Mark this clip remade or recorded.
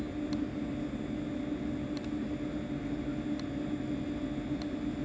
recorded